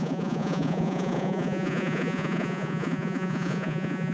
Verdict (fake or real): fake